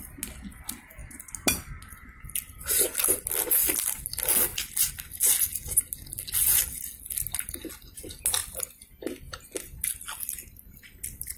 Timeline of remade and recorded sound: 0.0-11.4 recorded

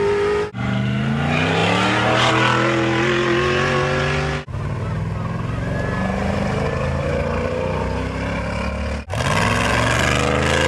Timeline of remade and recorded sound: 0.0-10.7 recorded

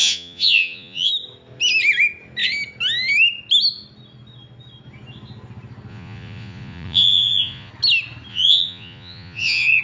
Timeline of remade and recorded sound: 0.0-1.1 remade; 1.1-5.9 recorded; 5.9-7.7 remade; 7.7-8.3 recorded; 8.3-9.8 remade

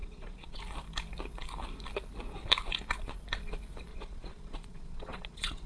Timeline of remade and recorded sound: 0.0-0.6 remade; 0.6-3.9 recorded; 3.9-5.7 remade

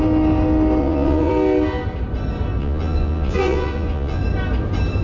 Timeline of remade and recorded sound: 0.0-0.8 recorded; 0.8-1.3 remade; 1.3-2.6 recorded; 2.6-4.2 remade; 4.2-5.0 recorded